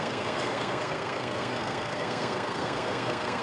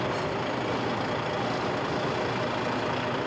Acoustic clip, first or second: second